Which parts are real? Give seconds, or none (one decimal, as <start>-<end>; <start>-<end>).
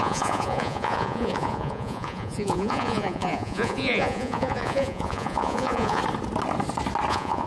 6.0-7.1